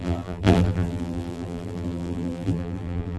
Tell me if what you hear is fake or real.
fake